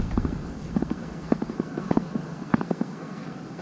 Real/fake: fake